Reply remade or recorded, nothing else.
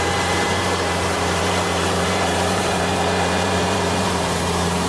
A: remade